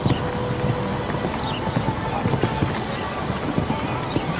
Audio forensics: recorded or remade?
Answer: recorded